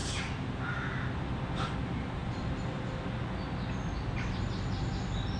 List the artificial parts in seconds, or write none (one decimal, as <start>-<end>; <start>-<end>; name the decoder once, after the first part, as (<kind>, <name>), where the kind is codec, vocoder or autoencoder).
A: none